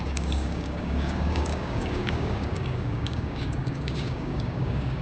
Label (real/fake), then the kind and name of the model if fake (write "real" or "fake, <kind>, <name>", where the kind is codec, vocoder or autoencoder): fake, codec, DAC